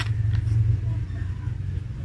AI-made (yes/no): no